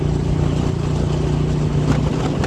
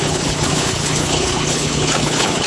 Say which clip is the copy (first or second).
second